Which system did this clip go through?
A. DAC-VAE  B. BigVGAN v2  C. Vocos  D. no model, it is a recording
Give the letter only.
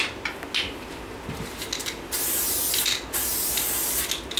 D